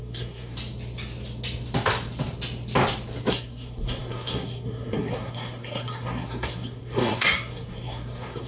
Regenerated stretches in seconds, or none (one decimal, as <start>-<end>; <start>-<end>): 0.0-0.5; 3.3-8.5